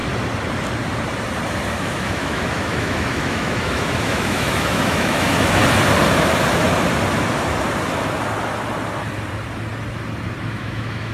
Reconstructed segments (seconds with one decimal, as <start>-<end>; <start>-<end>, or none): 1.7-5.6; 10.4-11.1